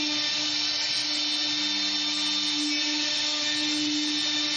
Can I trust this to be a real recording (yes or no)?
yes